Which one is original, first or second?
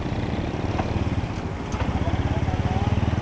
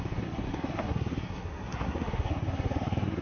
first